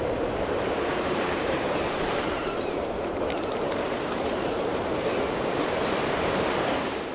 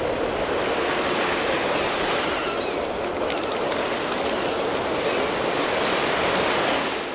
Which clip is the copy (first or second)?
first